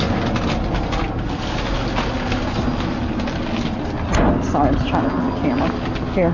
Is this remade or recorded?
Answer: recorded